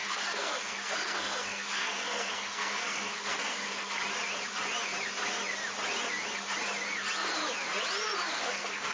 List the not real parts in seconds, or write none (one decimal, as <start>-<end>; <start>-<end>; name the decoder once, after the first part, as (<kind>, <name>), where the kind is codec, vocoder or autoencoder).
0.0-4.0 (codec, SNAC); 8.3-8.9